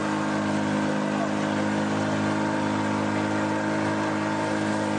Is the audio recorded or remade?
recorded